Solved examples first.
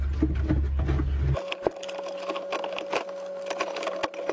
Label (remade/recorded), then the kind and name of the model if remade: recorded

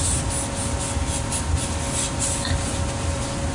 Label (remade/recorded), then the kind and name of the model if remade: recorded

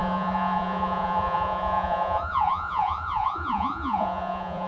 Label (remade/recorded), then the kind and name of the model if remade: remade, vocoder, Vocos